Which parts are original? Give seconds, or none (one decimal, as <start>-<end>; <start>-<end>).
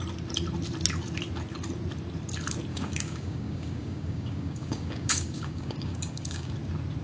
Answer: 0.0-2.7; 6.5-7.0